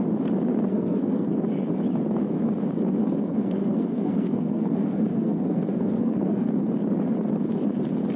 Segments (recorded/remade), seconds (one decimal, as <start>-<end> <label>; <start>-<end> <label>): 0.0-0.7 recorded; 0.7-1.3 remade; 1.3-3.0 recorded; 3.0-6.5 remade; 6.5-8.2 recorded